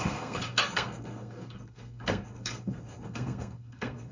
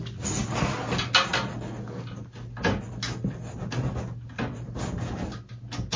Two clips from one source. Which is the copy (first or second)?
first